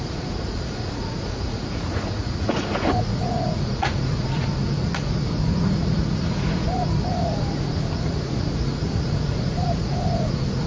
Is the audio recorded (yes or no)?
no